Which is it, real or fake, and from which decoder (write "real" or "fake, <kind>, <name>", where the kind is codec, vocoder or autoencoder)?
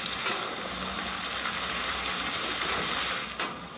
real